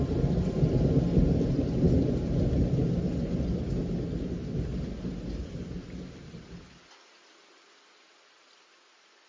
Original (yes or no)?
yes